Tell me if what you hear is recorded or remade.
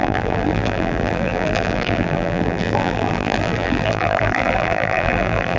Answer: remade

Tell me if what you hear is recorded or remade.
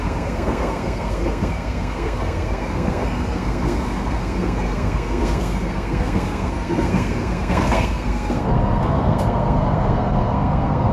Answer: remade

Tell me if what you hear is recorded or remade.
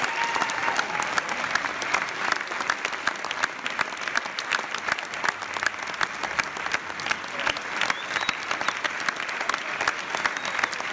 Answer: recorded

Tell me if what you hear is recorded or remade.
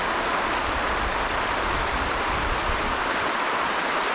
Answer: recorded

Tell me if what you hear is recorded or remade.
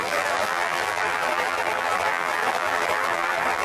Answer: remade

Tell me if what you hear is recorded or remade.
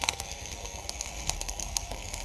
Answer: remade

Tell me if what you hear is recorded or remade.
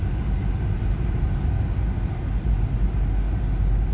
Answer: recorded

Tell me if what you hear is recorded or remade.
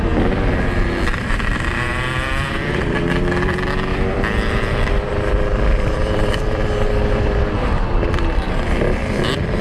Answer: remade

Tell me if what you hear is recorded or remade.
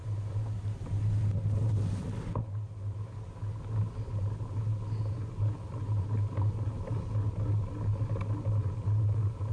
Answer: recorded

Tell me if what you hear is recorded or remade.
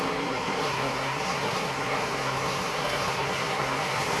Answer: remade